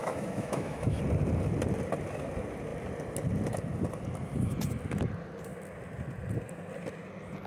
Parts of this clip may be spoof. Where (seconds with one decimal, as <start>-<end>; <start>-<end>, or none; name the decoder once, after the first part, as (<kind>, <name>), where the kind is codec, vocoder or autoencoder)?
0.0-1.0 (autoencoder, DAC-VAE)